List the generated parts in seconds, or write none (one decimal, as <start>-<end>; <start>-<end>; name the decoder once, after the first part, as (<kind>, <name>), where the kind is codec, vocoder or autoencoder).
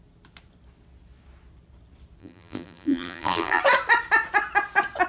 2.2-3.6 (vocoder, BigVGAN v2)